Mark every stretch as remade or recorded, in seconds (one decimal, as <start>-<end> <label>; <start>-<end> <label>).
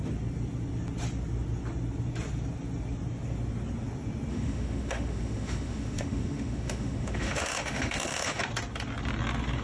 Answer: 0.0-4.3 recorded; 4.3-8.4 remade; 8.4-9.6 recorded